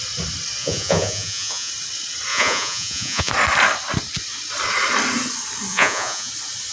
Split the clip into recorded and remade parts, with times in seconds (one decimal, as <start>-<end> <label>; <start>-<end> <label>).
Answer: 0.0-0.6 recorded; 0.6-1.7 remade; 1.7-2.3 recorded; 2.3-3.3 remade; 3.3-5.7 recorded; 5.7-6.3 remade; 6.3-6.7 recorded